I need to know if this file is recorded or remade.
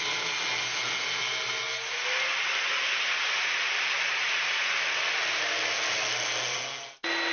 recorded